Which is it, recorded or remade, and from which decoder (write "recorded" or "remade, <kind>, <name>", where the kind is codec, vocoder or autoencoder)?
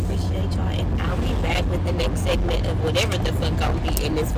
recorded